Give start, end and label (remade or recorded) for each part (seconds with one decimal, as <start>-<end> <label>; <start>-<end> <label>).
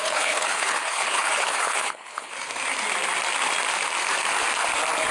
0.0-2.3 remade; 2.3-5.1 recorded